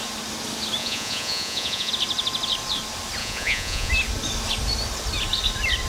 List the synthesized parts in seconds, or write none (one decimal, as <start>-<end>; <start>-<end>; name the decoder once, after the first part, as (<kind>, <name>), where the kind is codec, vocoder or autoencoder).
0.8-1.9 (vocoder, Vocos); 3.2-3.9

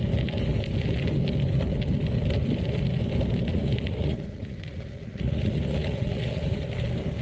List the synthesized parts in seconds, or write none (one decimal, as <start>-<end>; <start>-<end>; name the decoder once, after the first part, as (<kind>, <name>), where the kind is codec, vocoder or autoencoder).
3.5-6.6 (vocoder, Vocos)

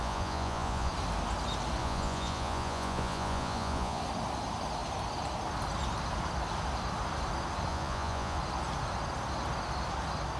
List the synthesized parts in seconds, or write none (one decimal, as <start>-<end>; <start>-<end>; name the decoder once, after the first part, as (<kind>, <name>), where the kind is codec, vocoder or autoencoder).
0.0-0.9 (vocoder, Vocos); 1.8-4.0; 7.7-8.4

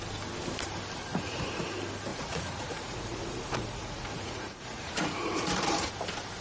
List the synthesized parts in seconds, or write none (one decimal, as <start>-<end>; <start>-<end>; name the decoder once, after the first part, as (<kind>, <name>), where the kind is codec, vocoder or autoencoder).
1.1-1.7 (vocoder, Vocos); 2.1-5.9